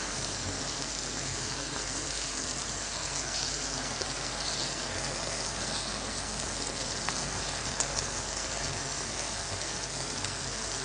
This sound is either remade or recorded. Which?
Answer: remade